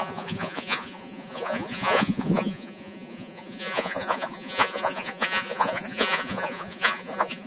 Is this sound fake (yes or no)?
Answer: yes